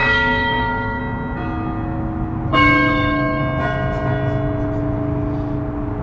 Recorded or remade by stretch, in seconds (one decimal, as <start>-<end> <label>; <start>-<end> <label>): 0.0-1.0 remade; 1.0-2.5 recorded; 2.5-3.4 remade; 3.4-6.0 recorded